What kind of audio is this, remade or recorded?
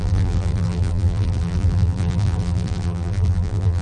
remade